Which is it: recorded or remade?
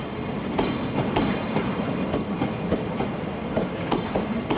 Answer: remade